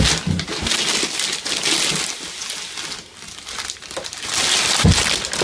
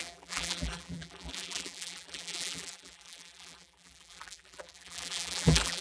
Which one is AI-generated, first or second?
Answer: second